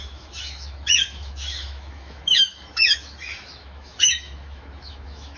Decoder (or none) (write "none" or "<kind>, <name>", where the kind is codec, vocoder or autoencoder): autoencoder, DAC-VAE